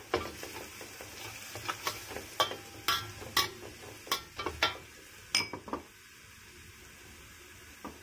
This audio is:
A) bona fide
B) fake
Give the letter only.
A